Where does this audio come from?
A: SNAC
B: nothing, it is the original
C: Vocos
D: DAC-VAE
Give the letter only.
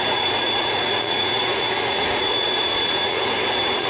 C